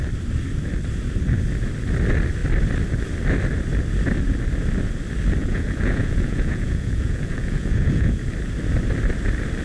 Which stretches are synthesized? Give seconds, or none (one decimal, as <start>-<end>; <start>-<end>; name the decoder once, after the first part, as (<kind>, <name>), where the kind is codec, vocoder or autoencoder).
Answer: 5.4-8.2 (vocoder, Vocos)